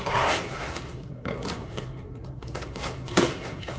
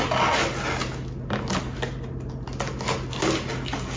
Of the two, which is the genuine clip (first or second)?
second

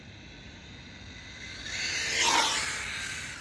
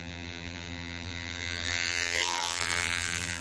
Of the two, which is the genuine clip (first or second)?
first